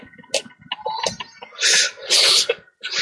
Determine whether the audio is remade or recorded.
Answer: recorded